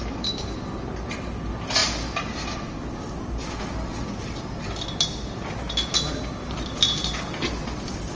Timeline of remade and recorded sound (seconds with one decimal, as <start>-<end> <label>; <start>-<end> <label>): 0.0-8.2 recorded

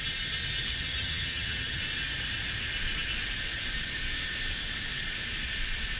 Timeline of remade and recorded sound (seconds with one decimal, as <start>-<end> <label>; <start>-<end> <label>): 0.0-0.7 recorded; 0.7-1.8 remade; 1.8-6.0 recorded

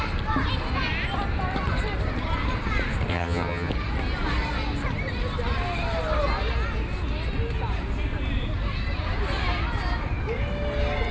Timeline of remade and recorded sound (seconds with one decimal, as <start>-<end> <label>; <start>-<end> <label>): 0.0-3.1 recorded; 3.1-3.7 remade; 3.7-11.1 recorded

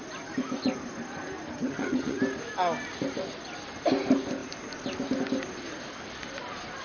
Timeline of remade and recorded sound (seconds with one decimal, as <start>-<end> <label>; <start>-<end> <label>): 0.0-1.6 recorded; 1.6-2.2 remade; 2.2-6.8 recorded

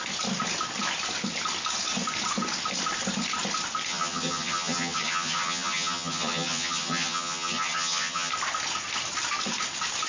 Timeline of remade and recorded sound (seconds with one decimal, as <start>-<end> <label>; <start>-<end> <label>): 0.0-3.9 recorded; 3.9-8.3 remade; 8.3-10.1 recorded

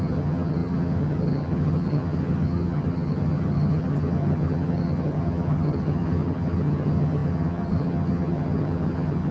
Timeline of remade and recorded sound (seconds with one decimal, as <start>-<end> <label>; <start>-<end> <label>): 0.0-9.3 remade

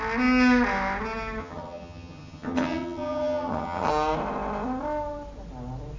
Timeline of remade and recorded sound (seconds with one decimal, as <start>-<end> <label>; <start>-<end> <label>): 0.0-1.4 recorded; 1.4-3.9 remade; 3.9-6.0 recorded